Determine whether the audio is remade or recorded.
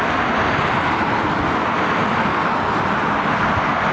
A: recorded